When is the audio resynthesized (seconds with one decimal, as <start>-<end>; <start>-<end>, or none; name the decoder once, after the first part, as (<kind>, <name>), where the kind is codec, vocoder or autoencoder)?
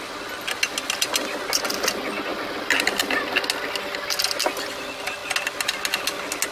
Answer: none